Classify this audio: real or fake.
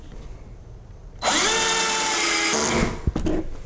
real